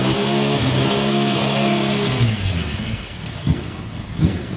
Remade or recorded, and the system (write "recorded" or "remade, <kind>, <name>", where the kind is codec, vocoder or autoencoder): remade, codec, SNAC